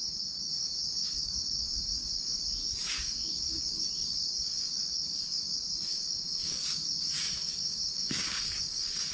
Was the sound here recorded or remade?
remade